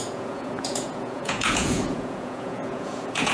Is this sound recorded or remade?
remade